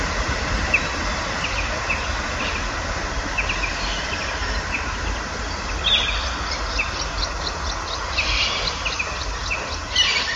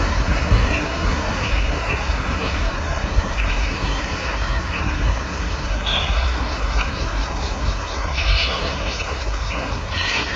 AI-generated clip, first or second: second